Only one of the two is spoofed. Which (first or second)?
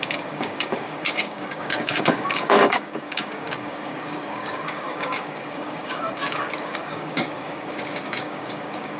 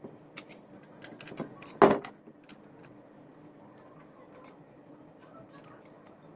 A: first